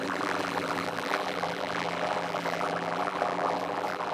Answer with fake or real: fake